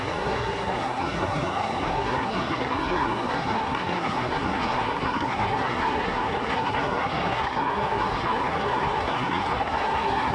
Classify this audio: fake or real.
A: fake